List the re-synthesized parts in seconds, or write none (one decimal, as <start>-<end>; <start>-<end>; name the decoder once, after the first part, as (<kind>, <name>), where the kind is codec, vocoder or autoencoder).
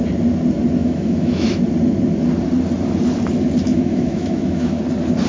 0.8-1.6 (autoencoder, DAC-VAE); 3.7-4.8